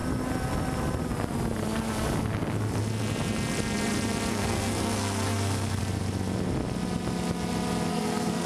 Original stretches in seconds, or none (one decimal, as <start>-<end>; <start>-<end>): 0.0-4.3; 5.8-7.9